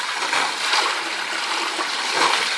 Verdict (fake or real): real